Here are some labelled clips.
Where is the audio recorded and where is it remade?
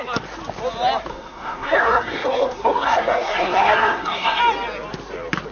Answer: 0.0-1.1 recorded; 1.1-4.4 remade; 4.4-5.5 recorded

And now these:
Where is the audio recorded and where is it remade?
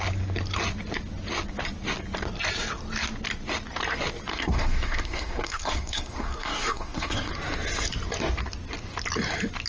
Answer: 0.0-4.3 recorded; 4.3-7.3 remade; 7.3-9.7 recorded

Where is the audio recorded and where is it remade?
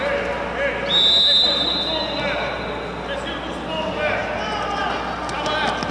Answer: 0.0-5.9 recorded